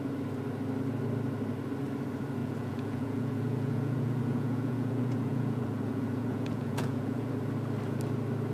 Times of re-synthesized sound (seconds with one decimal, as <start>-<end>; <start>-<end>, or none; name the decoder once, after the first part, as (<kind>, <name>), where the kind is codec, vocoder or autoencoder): 2.4-7.3 (vocoder, Vocos)